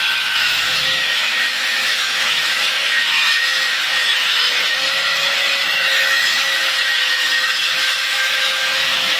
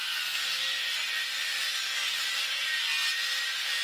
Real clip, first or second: second